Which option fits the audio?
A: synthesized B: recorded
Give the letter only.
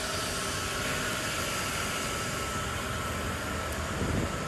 B